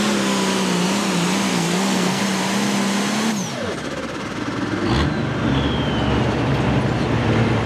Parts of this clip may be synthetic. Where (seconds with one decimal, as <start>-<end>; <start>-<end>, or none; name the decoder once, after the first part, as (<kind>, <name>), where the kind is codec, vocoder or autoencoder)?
1.5-2.2 (codec, SNAC)